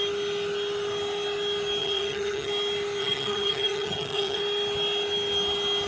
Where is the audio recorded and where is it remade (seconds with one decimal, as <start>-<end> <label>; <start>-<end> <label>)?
0.0-1.8 recorded; 1.8-2.5 remade; 2.5-3.0 recorded; 3.0-4.4 remade; 4.4-5.9 recorded